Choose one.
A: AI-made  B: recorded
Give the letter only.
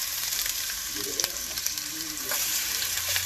A